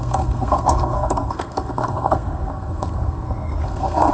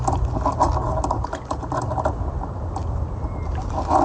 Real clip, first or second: second